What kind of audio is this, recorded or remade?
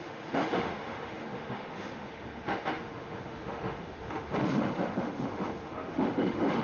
remade